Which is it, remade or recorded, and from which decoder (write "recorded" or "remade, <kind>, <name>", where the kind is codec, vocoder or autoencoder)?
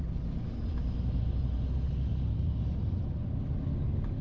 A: recorded